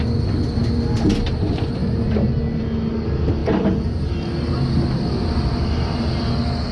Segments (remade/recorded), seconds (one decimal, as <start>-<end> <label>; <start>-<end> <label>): 0.0-6.7 recorded